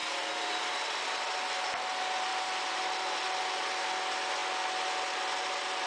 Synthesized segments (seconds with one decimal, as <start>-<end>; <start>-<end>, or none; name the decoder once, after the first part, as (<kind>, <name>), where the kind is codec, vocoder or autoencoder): none